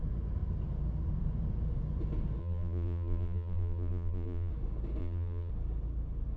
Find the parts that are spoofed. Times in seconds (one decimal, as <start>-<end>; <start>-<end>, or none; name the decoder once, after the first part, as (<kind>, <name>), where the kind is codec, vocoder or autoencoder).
2.4-4.5 (vocoder, BigVGAN v2); 5.0-5.5